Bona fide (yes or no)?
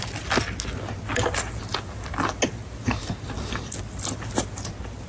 yes